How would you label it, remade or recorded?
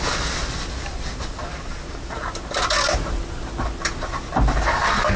recorded